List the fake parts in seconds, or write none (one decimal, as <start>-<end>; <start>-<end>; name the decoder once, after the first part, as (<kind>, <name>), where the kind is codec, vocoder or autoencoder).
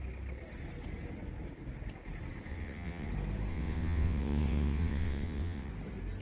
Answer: 2.5-3.1 (vocoder, WaveNeXt); 3.5-5.7